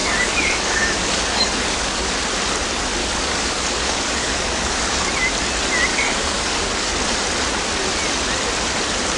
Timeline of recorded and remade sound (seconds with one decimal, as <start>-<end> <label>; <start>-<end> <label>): 0.0-2.1 remade; 2.1-3.0 recorded; 3.0-5.1 remade; 5.1-5.9 recorded; 5.9-7.0 remade; 7.0-9.2 recorded